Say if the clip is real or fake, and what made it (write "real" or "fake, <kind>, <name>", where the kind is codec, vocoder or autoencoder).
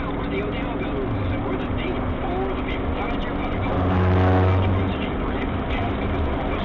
real